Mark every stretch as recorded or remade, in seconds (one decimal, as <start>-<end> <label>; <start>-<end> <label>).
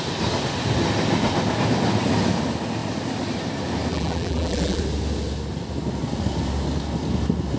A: 0.0-3.9 recorded; 3.9-4.8 remade; 4.8-7.6 recorded